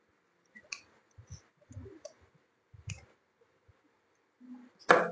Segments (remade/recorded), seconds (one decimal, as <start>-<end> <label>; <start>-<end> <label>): 0.0-5.1 recorded